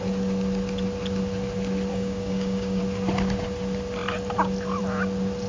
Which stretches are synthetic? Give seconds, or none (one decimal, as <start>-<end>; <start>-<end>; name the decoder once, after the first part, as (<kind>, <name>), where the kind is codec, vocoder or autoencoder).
1.9-2.8 (codec, DAC)